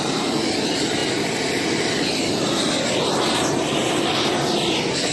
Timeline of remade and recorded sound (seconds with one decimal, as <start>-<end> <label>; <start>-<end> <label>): 0.0-5.1 recorded